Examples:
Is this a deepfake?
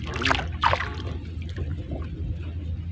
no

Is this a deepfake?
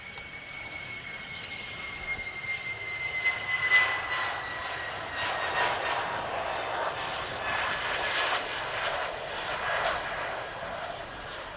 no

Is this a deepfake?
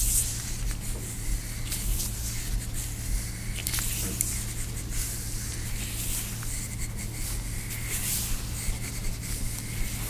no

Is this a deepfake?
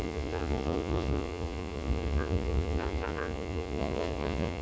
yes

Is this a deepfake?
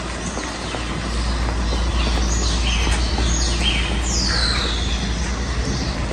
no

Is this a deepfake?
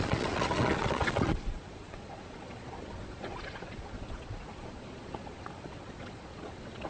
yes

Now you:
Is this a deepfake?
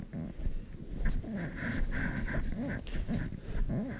no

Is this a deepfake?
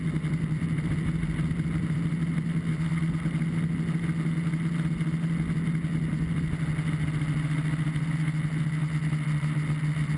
no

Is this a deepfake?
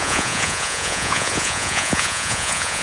yes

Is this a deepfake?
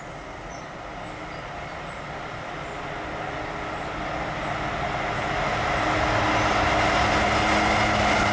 no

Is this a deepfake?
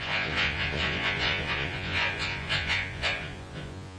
yes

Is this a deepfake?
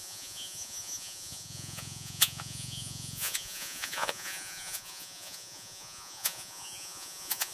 yes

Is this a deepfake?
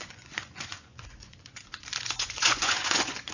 yes